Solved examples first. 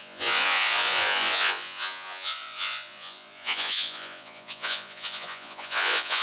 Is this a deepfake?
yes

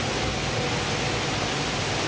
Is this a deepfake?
no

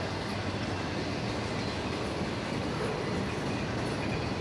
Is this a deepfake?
no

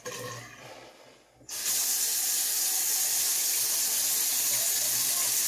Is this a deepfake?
no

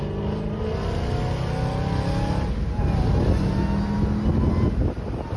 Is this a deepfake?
no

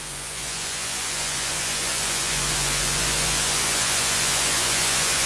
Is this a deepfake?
yes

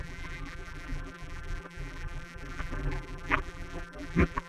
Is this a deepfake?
yes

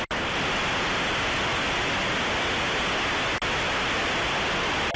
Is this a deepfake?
no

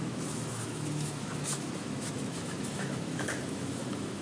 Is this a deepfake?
yes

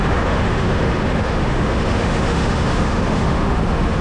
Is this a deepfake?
yes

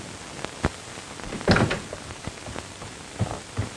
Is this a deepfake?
no